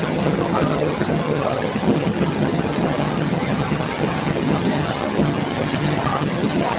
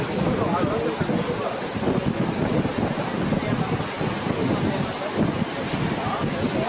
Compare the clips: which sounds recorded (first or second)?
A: second